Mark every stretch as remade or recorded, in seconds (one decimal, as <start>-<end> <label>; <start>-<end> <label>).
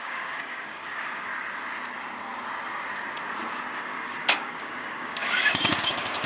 0.0-1.3 remade; 1.3-3.7 recorded; 3.7-6.3 remade